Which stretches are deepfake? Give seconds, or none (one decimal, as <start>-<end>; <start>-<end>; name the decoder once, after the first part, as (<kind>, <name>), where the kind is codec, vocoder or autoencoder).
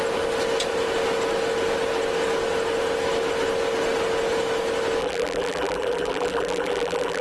5.0-7.2 (vocoder, BigVGAN v2)